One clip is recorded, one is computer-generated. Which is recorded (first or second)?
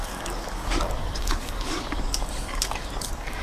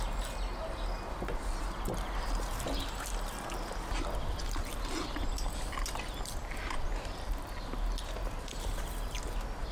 second